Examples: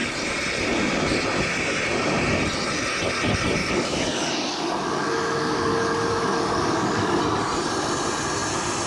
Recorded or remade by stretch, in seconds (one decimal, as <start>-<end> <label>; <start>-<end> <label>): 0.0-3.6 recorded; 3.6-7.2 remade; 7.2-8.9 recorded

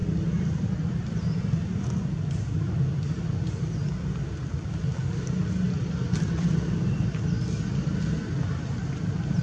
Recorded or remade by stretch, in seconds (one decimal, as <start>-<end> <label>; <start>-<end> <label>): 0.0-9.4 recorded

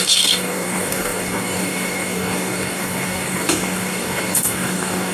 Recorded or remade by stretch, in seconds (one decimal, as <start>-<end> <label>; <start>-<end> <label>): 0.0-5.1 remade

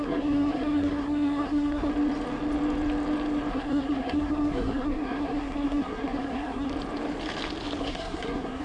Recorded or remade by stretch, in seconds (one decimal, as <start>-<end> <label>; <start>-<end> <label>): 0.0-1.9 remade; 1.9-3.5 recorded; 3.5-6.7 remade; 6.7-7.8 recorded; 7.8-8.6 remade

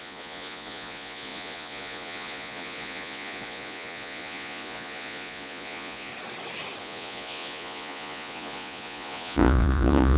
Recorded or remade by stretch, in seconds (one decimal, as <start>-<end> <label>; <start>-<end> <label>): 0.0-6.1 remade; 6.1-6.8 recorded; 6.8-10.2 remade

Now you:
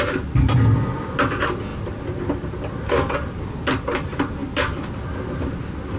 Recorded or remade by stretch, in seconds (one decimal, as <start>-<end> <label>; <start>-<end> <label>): 0.0-6.0 recorded